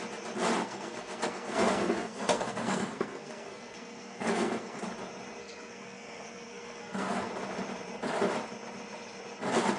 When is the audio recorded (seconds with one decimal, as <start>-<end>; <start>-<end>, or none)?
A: 0.0-0.6; 4.8-5.4; 7.3-9.8